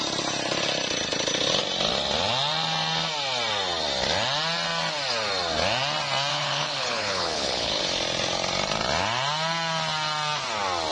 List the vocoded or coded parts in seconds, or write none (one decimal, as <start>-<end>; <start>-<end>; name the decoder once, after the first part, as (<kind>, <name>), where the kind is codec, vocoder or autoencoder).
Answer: 6.3-7.8 (codec, HILCodec)